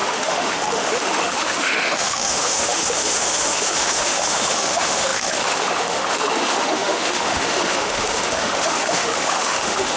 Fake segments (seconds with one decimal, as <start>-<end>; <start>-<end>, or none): 0.0-10.0